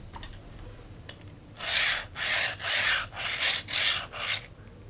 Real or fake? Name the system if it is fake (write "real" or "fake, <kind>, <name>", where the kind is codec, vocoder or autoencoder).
real